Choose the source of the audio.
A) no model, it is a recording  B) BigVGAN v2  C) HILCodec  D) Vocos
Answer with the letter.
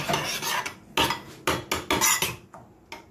A